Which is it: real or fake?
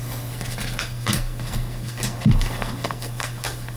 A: fake